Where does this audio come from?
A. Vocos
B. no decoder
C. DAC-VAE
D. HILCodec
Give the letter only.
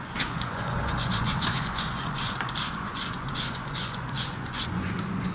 A